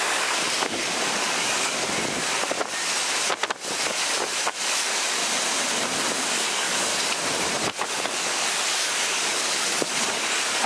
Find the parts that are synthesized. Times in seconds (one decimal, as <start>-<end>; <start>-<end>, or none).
0.0-1.8; 4.6-5.2; 6.3-6.9; 7.9-10.7